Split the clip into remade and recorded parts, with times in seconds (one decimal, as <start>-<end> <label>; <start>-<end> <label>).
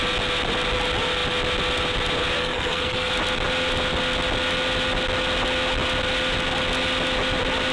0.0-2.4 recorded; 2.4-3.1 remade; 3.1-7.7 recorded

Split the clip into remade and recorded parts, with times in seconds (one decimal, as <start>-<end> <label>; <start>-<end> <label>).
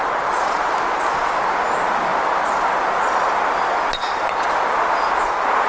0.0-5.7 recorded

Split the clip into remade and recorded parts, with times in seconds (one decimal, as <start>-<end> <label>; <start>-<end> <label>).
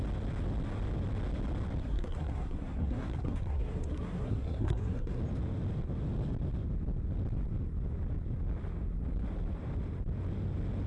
0.0-1.8 recorded; 1.8-5.2 remade; 5.2-10.9 recorded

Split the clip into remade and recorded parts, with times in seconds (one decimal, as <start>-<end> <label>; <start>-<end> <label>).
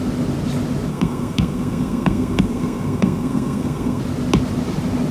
0.0-0.9 recorded; 0.9-4.0 remade; 4.0-5.1 recorded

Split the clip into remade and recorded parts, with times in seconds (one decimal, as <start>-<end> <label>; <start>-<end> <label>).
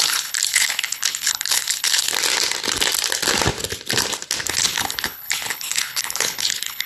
0.0-2.1 remade; 2.1-4.5 recorded; 4.5-6.9 remade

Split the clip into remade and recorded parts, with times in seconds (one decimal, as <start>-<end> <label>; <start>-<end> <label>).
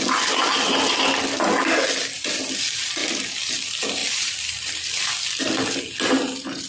0.0-4.0 recorded; 4.0-5.8 remade; 5.8-6.7 recorded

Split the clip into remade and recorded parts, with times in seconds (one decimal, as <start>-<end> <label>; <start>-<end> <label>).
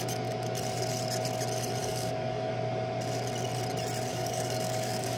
0.0-1.8 recorded; 1.8-2.5 remade; 2.5-4.1 recorded; 4.1-5.2 remade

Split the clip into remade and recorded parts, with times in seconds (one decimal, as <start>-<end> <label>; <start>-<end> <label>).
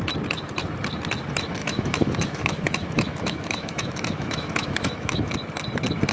0.0-1.6 recorded; 1.6-5.3 remade; 5.3-6.1 recorded